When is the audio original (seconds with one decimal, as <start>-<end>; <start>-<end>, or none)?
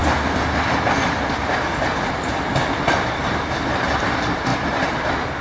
0.0-3.2; 4.5-5.4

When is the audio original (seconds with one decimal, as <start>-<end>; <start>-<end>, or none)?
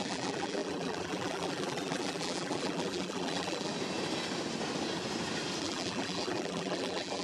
3.7-5.6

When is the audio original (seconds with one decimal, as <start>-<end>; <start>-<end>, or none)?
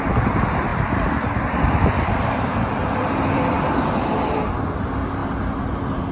0.0-0.7; 4.4-6.1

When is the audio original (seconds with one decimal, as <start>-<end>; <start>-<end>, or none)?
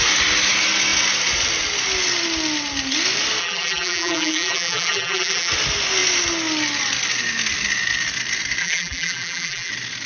0.0-3.4; 5.5-8.6; 9.7-10.1